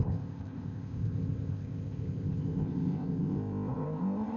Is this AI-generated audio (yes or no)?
yes